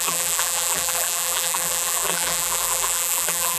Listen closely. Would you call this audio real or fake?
fake